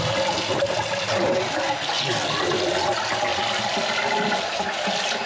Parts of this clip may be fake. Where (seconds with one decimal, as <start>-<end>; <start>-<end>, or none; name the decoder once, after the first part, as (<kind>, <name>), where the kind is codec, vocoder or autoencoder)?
3.3-4.3 (vocoder, BigVGAN v2)